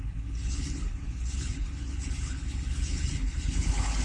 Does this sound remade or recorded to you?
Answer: remade